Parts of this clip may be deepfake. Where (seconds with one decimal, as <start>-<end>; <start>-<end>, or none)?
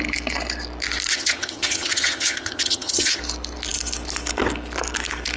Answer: 1.1-3.2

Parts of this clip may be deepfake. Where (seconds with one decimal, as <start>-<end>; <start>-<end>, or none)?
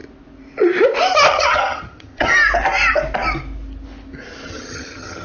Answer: 1.3-2.3; 4.5-5.2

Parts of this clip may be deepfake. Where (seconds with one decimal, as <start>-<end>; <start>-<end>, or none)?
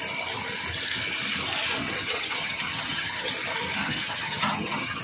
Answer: 1.8-3.3; 3.8-5.0